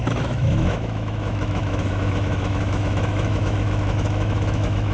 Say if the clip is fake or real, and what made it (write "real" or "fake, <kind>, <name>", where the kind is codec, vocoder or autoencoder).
fake, autoencoder, DAC-VAE